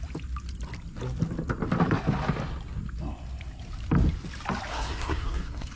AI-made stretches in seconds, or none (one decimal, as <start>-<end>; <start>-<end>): 4.7-5.8

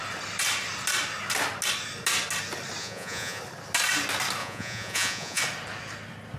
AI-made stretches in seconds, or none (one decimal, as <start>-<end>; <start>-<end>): 2.8-3.4; 4.4-5.4

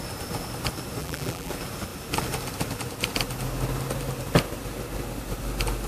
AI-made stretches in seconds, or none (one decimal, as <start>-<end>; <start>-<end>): 1.0-1.5

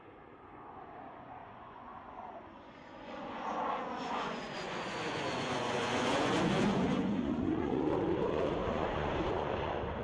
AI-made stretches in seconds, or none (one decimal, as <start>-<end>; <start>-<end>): 0.0-10.0

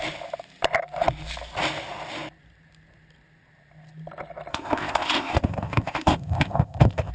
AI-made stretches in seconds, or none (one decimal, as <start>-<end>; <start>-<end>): 4.5-7.1

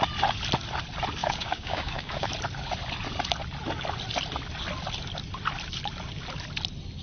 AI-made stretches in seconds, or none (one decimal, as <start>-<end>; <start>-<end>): 1.2-2.3

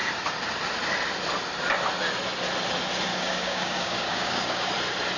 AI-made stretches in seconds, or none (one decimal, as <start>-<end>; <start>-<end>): 3.1-4.7